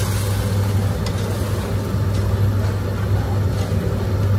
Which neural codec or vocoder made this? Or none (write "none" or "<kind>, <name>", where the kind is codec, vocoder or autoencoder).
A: none